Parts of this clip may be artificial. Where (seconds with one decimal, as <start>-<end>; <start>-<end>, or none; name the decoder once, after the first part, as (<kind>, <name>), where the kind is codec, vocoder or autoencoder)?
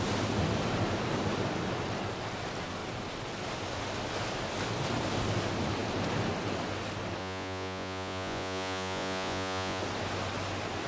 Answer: 7.2-9.8 (vocoder, Vocos)